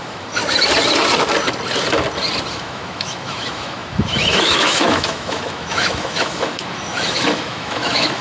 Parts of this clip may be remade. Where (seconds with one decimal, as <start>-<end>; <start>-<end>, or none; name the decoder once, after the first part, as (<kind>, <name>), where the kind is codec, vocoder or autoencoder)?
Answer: 0.0-0.4 (autoencoder, DAC-VAE); 2.5-8.2